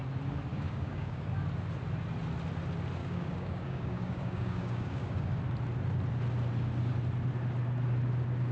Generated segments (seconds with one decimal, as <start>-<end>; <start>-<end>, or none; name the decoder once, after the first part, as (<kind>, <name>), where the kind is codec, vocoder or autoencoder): 0.5-1.3 (codec, DAC); 3.0-5.4